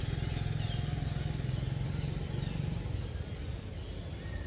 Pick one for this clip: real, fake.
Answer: real